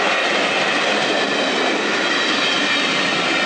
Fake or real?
real